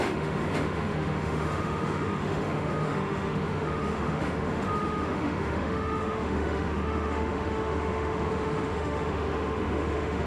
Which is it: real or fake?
fake